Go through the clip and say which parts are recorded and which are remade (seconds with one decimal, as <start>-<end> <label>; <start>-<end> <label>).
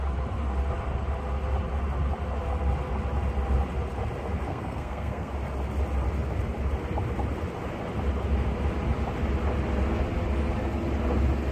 0.0-4.5 recorded; 4.5-5.3 remade; 5.3-11.5 recorded